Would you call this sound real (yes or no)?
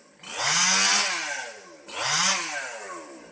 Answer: yes